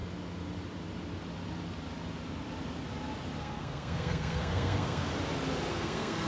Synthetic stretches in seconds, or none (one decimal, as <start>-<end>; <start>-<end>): 3.4-5.1; 5.7-6.3